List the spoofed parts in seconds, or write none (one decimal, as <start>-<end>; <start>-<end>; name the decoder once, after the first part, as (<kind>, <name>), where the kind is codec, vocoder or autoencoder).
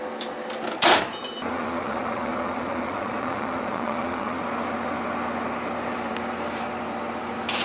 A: 1.5-4.4 (vocoder, Vocos)